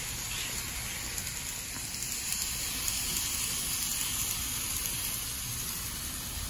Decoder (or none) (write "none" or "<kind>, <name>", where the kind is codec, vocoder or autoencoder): none